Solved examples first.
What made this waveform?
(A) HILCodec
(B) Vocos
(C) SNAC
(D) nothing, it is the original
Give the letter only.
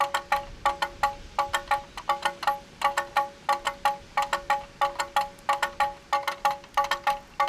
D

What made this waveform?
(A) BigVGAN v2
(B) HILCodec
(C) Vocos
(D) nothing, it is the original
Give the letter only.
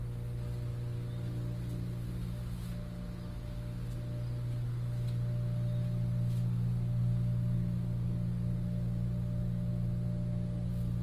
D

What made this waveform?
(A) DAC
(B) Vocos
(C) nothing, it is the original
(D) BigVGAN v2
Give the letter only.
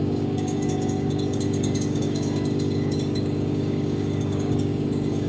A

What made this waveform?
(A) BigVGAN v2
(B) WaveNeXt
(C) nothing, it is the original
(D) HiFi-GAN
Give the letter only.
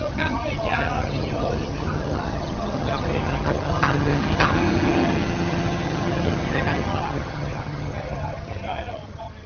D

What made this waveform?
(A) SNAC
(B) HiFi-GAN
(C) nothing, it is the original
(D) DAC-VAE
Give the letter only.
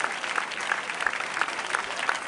C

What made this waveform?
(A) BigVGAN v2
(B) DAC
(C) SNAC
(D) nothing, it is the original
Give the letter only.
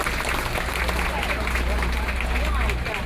D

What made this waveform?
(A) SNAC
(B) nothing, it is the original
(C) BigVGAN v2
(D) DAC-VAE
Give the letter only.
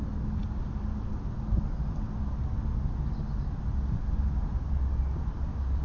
B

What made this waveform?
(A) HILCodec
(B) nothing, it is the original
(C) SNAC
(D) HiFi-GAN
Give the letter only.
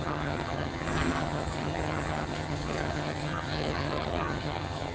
D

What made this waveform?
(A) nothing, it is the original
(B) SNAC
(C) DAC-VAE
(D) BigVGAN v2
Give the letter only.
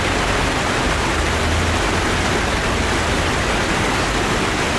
A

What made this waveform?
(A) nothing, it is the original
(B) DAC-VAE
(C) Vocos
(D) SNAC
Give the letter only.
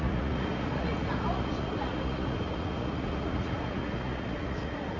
C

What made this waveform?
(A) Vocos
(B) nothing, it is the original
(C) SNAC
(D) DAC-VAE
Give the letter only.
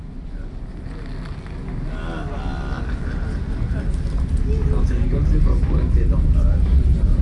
B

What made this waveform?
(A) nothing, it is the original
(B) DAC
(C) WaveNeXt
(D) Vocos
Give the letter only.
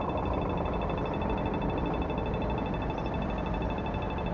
A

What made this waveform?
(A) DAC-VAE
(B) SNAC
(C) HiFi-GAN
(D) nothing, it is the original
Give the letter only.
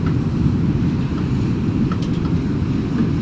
D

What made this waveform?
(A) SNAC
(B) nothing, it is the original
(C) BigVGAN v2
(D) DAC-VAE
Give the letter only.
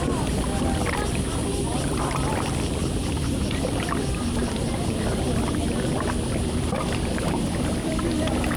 C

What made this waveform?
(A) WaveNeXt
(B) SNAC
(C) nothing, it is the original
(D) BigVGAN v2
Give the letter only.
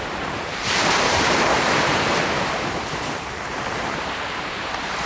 D